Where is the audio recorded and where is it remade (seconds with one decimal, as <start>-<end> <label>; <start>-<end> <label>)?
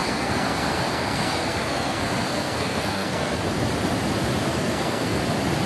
0.0-3.4 remade; 3.4-4.5 recorded; 4.5-5.2 remade; 5.2-5.7 recorded